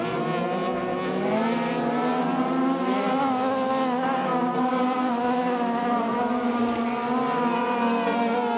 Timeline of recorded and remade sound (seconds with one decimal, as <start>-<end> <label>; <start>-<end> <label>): 0.0-8.6 recorded